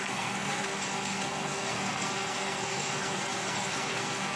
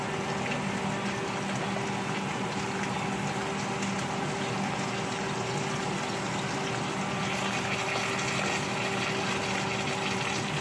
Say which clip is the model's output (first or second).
first